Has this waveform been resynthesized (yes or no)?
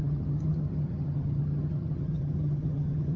yes